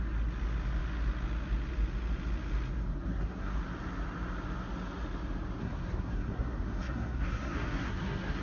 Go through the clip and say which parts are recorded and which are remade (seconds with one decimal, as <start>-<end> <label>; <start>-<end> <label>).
0.0-2.9 recorded; 2.9-3.6 remade; 3.6-5.6 recorded; 5.6-8.4 remade